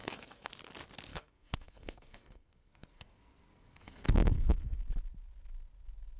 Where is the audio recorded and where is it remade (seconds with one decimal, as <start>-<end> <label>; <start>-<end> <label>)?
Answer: 0.0-0.5 remade; 0.5-1.1 recorded; 1.1-4.8 remade; 4.8-6.2 recorded